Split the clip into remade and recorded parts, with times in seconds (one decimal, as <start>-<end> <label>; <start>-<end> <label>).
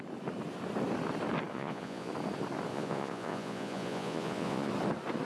0.0-1.5 recorded; 1.5-2.1 remade; 2.1-2.7 recorded; 2.7-4.7 remade; 4.7-5.3 recorded